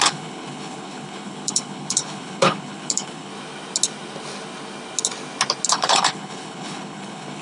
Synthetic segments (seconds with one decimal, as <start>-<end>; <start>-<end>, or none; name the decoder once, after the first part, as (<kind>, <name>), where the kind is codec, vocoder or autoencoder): 0.0-3.3 (codec, HILCodec); 5.7-7.4

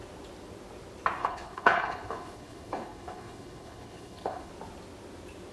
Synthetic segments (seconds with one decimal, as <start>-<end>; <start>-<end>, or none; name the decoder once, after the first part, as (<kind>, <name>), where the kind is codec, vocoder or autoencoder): 1.2-4.5 (codec, HILCodec)

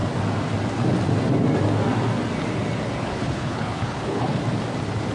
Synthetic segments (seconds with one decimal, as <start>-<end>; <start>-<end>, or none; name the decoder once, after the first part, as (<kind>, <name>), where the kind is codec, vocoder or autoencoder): 3.1-4.4 (codec, HILCodec)

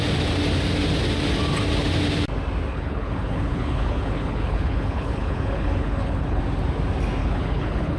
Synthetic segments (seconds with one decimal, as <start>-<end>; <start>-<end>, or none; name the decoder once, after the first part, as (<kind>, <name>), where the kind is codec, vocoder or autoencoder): 2.7-6.4 (codec, HILCodec); 7.2-8.0

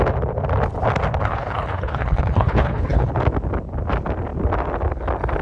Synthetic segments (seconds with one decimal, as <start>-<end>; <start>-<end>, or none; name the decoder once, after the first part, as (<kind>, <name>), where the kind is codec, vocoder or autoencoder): 1.2-3.1 (codec, HILCodec)